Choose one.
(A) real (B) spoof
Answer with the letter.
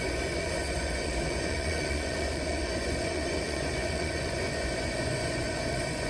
B